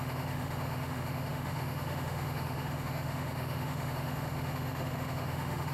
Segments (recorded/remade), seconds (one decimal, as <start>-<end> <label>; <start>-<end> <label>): 0.0-5.7 remade